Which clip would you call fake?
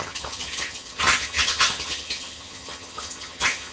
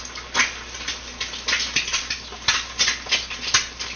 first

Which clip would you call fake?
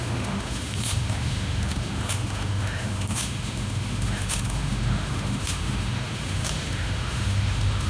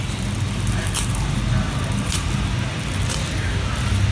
first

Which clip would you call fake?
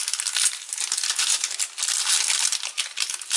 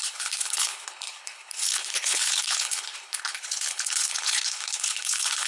second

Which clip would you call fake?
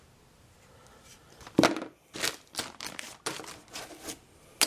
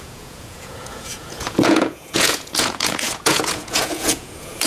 second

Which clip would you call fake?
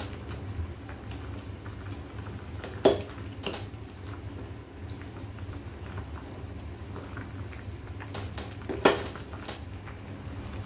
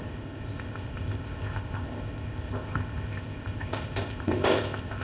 second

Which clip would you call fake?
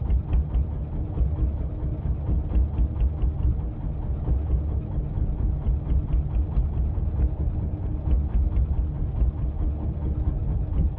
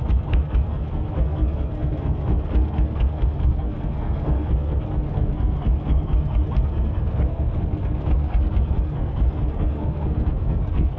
second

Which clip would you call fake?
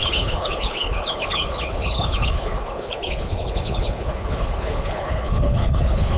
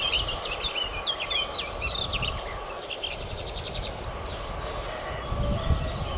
first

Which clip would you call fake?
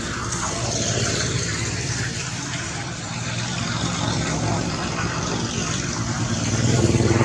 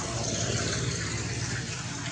first